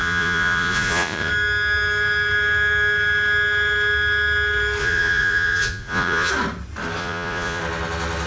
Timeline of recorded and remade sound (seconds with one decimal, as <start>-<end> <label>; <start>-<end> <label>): 0.0-1.3 remade; 1.3-4.8 recorded; 4.8-6.3 remade; 6.3-7.0 recorded; 7.0-7.6 remade; 7.6-8.3 recorded